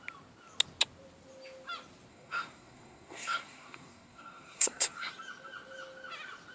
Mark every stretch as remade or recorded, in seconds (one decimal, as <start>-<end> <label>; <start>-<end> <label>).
0.0-2.1 recorded; 2.1-5.1 remade; 5.1-6.5 recorded